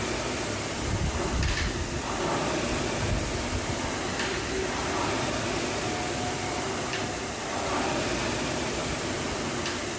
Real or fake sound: real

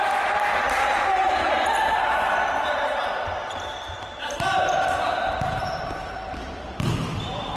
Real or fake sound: fake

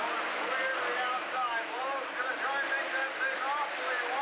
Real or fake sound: real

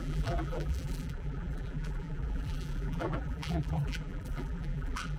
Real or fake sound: fake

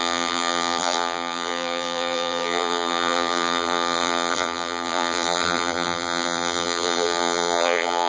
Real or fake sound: fake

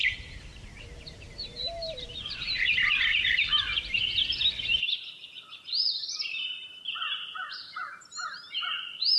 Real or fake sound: fake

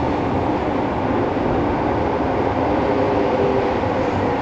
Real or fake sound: real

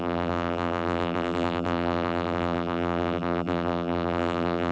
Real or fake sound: fake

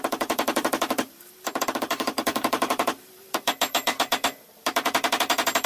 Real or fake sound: fake